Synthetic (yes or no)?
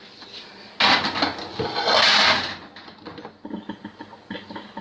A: no